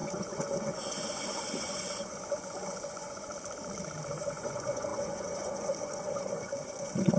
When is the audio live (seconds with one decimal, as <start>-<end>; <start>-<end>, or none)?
3.3-4.2